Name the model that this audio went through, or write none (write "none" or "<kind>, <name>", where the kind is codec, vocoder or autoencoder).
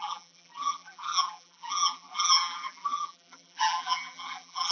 vocoder, BigVGAN v2